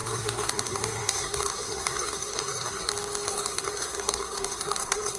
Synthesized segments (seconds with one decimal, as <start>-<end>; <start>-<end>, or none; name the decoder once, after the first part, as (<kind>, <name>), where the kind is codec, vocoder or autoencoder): 0.0-2.9 (codec, SNAC); 3.3-5.2